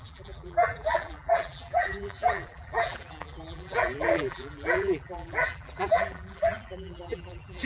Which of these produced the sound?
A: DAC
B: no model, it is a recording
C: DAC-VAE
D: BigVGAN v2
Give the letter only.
D